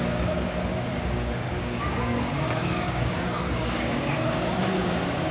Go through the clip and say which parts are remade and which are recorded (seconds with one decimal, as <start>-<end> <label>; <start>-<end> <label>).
0.0-5.3 remade